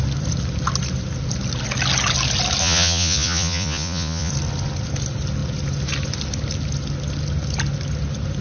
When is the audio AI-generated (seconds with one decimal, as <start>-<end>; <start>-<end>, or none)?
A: 2.6-4.3

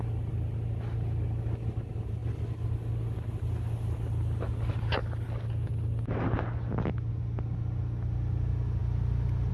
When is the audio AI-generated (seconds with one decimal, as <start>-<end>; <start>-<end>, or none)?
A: none

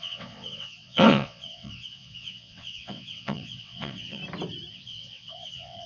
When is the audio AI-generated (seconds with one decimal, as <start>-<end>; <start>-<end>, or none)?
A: 0.0-4.2; 4.7-5.9